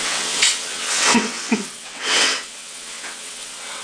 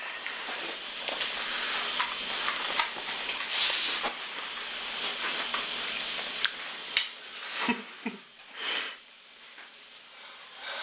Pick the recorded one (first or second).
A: second